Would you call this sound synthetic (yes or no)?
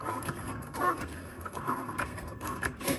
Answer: yes